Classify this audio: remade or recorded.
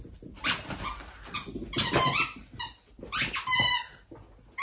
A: recorded